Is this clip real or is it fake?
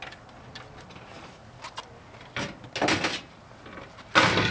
real